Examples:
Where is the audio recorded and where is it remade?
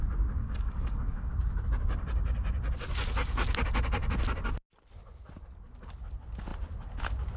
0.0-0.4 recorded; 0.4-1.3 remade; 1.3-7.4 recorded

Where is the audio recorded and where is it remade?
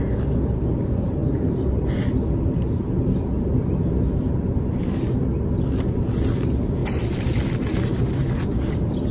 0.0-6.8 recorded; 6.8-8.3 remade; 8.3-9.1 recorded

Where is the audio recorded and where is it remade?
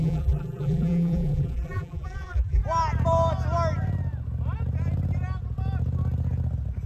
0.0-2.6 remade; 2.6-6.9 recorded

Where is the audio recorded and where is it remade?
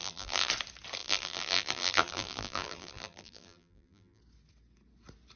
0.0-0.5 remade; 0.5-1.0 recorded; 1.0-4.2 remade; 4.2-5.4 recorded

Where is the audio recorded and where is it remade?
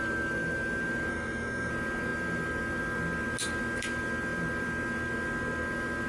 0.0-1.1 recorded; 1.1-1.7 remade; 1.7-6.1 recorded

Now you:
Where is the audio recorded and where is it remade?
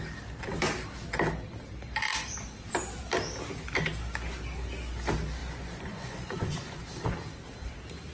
0.0-5.4 recorded; 5.4-6.8 remade; 6.8-8.1 recorded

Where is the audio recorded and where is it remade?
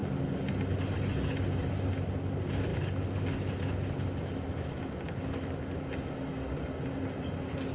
0.0-7.7 recorded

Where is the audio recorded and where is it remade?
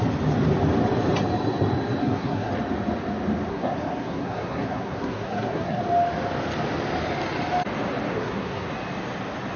0.0-2.0 recorded; 2.0-2.5 remade; 2.5-3.5 recorded; 3.5-5.8 remade; 5.8-8.1 recorded; 8.1-8.7 remade; 8.7-9.6 recorded